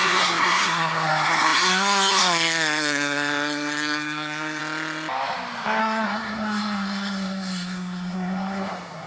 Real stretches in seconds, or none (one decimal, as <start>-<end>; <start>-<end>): 4.6-5.8